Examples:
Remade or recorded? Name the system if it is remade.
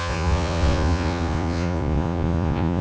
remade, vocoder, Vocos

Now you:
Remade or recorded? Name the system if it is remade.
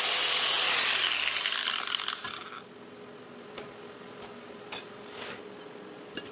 recorded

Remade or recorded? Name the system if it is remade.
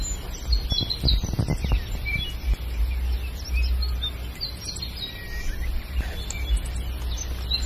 recorded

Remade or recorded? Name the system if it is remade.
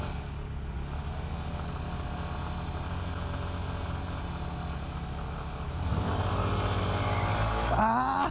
recorded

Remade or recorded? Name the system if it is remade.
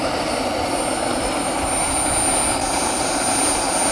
recorded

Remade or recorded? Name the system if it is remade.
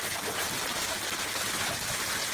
recorded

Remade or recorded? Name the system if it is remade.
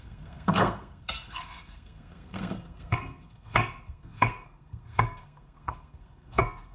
remade, codec, SNAC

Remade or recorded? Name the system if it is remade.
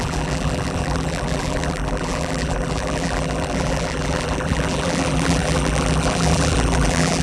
remade, vocoder, BigVGAN v2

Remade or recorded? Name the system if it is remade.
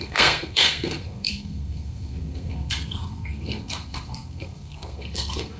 remade, codec, SNAC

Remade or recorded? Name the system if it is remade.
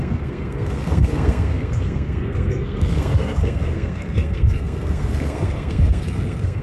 remade, codec, SNAC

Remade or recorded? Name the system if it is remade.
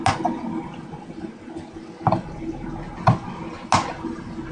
recorded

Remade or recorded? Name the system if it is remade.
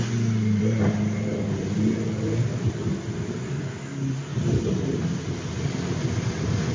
recorded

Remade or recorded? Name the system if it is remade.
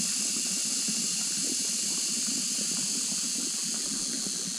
recorded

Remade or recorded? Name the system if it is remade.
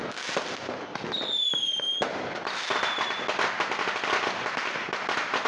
recorded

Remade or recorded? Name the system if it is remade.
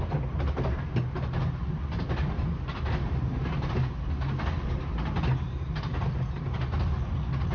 recorded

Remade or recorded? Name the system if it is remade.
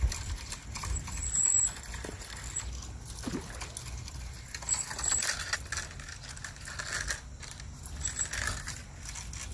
recorded